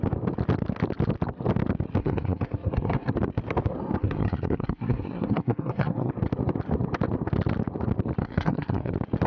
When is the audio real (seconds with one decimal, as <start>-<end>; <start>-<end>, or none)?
0.0-2.0; 3.1-4.0; 6.1-8.2; 8.9-9.3